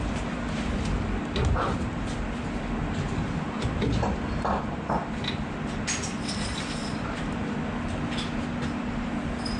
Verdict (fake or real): real